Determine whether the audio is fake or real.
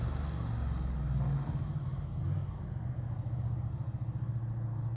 real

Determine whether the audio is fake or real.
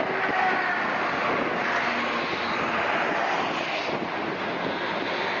real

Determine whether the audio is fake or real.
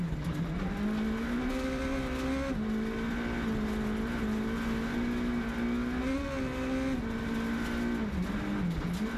real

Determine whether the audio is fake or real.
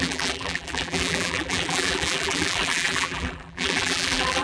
fake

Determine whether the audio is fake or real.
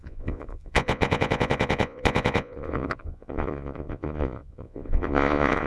fake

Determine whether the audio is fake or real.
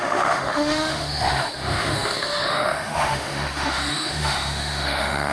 fake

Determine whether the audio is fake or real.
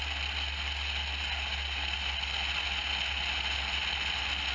real